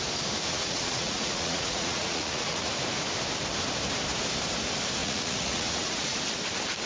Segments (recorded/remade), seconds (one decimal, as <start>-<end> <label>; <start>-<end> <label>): 0.0-0.5 recorded; 0.5-2.7 remade; 2.7-5.0 recorded; 5.0-6.2 remade; 6.2-6.9 recorded